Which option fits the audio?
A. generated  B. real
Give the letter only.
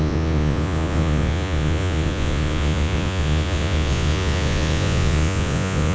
A